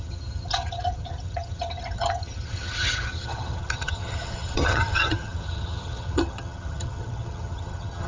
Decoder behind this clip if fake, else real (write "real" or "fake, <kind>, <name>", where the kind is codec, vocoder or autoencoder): fake, vocoder, HiFi-GAN